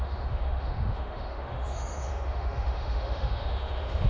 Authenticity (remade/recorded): remade